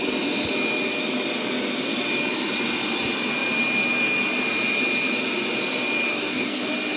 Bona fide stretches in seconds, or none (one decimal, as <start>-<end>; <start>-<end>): 0.0-6.1; 6.6-7.0